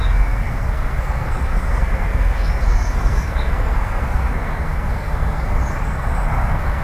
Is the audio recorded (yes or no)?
no